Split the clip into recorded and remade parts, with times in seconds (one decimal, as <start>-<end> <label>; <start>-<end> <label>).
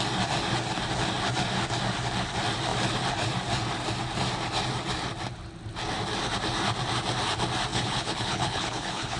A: 0.0-7.7 recorded; 7.7-9.2 remade